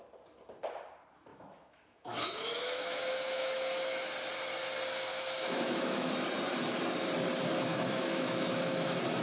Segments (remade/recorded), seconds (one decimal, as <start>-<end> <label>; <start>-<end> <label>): 0.0-1.3 recorded; 1.3-4.1 remade; 4.1-5.1 recorded; 5.1-6.1 remade; 6.1-7.7 recorded; 7.7-9.2 remade